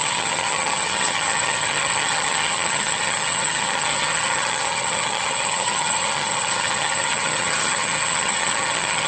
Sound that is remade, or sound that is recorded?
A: remade